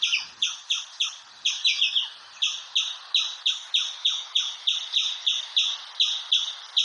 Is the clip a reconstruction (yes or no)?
no